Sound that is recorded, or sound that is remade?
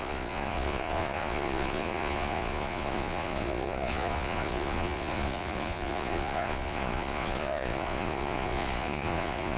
remade